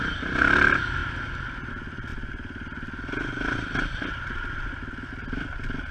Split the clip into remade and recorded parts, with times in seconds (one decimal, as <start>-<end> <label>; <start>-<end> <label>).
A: 0.0-5.9 recorded